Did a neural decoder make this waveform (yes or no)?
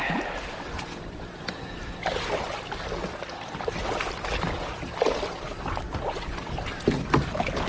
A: no